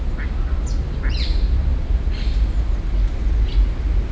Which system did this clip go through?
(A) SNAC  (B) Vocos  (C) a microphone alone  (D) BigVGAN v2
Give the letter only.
C